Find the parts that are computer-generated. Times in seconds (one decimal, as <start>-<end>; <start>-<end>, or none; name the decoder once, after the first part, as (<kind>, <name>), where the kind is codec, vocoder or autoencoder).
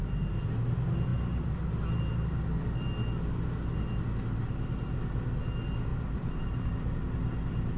5.9-7.0 (vocoder, BigVGAN v2)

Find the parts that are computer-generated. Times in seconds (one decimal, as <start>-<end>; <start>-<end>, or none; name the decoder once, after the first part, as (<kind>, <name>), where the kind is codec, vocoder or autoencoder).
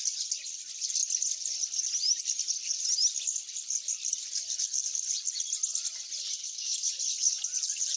6.4-7.0 (codec, HILCodec)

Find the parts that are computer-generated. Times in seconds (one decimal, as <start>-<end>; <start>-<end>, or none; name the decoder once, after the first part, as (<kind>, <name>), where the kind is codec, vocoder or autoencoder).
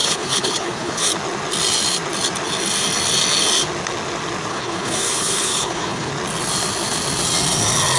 0.0-1.1 (codec, HILCodec); 4.5-6.1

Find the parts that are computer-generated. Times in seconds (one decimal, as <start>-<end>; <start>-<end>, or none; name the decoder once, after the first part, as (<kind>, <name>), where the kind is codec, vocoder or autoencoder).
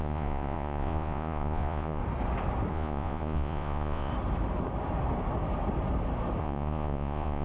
0.0-2.0 (vocoder, Vocos); 2.7-4.1; 6.4-7.4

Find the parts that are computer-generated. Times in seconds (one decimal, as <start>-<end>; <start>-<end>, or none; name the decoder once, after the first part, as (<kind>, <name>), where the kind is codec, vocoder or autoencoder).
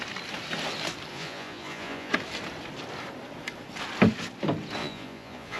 1.1-2.1 (vocoder, Vocos); 4.8-5.6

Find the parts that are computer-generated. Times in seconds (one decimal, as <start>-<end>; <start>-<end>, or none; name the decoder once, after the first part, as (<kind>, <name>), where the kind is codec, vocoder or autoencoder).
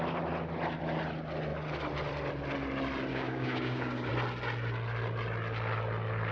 3.1-4.1 (codec, DAC)